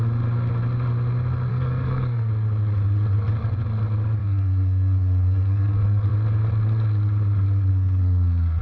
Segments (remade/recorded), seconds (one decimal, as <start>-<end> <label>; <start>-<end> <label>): 0.0-1.5 recorded; 1.5-2.3 remade; 2.3-4.2 recorded; 4.2-6.1 remade; 6.1-7.7 recorded; 7.7-8.6 remade